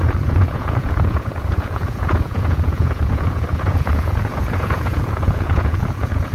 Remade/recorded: remade